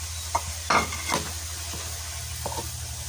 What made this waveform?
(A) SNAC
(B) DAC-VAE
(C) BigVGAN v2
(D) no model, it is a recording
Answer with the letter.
D